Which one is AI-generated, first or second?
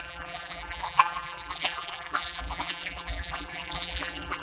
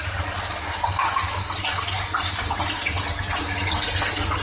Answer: first